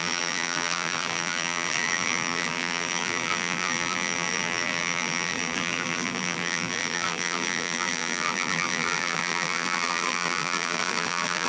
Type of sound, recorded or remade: remade